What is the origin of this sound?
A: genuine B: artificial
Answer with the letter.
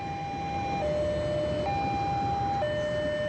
A